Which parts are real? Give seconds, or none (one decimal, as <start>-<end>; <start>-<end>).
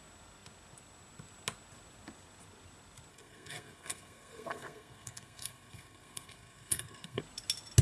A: 0.0-3.1; 7.2-7.8